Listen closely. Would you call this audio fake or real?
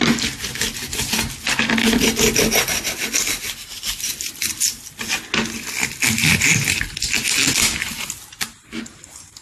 real